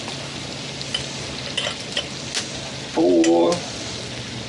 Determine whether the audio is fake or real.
real